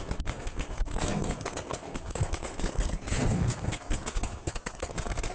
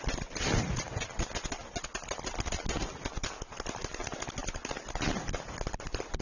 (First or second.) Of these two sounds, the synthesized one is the first